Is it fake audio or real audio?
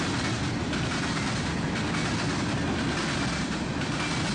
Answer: real